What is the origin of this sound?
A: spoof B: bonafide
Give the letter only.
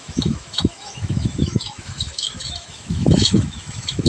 A